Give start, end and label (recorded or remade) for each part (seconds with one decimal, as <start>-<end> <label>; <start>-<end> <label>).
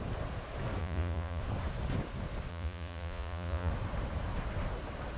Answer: 0.0-0.8 recorded; 0.8-1.4 remade; 1.4-2.5 recorded; 2.5-3.7 remade; 3.7-5.2 recorded